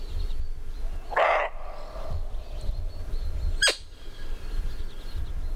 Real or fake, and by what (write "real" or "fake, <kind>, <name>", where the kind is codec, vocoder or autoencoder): real